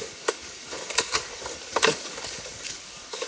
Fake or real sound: fake